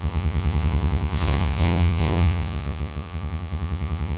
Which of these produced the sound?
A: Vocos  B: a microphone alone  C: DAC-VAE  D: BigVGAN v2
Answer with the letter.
A